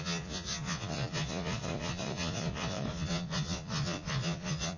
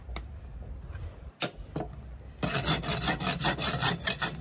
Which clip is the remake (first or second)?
first